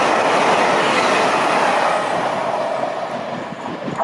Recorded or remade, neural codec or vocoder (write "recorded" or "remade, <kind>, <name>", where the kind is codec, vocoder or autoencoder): recorded